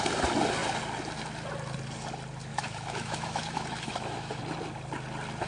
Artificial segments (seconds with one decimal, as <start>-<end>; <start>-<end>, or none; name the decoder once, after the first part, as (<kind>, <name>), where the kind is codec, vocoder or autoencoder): 2.5-4.4 (autoencoder, DAC-VAE)